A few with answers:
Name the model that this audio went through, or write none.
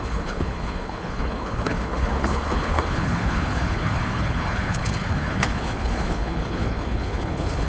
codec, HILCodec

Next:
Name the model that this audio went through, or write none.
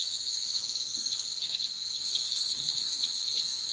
codec, SNAC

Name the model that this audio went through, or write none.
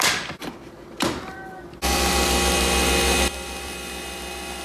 none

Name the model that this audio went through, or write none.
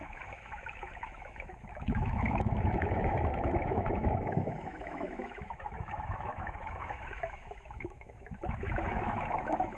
autoencoder, DAC-VAE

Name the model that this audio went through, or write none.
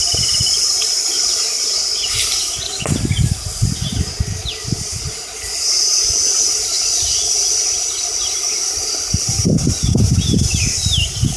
none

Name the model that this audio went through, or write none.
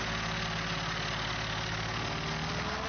none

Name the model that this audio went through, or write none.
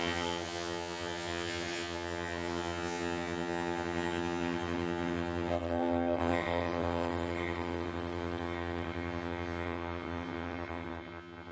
vocoder, HiFi-GAN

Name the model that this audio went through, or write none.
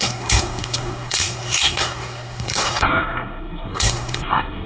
codec, SNAC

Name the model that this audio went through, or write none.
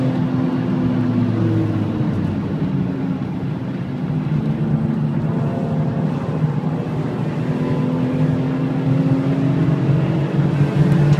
none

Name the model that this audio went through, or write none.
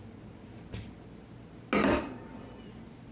none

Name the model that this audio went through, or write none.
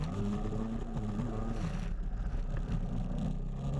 none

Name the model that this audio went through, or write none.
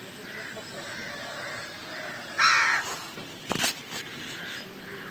vocoder, BigVGAN v2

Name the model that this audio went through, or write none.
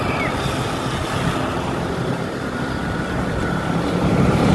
none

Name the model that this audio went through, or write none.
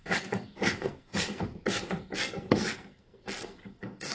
codec, SNAC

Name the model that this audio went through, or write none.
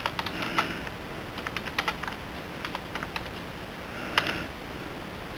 none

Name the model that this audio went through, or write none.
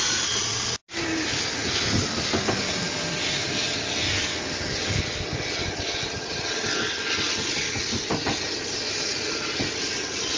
none